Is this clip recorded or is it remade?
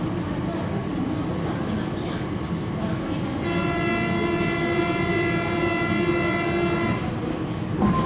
recorded